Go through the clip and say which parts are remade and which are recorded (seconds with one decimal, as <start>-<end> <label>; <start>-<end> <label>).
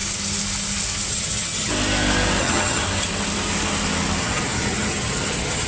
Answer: 0.0-1.1 recorded; 1.1-1.7 remade; 1.7-2.4 recorded; 2.4-2.8 remade; 2.8-4.2 recorded; 4.2-5.7 remade